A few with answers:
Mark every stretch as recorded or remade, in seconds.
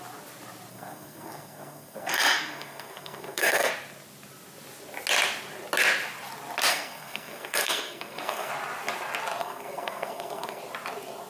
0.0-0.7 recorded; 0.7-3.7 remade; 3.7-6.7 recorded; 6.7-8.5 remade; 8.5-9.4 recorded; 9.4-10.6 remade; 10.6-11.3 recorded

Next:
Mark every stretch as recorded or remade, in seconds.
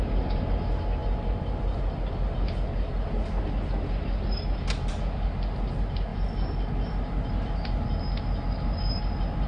0.0-9.5 recorded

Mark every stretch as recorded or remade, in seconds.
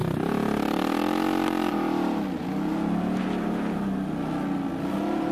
0.0-5.3 recorded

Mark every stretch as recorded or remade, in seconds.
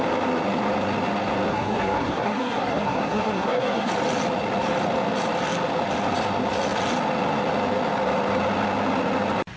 0.0-1.5 recorded; 1.5-3.9 remade; 3.9-9.6 recorded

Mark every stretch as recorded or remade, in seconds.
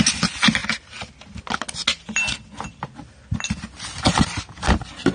0.0-5.1 recorded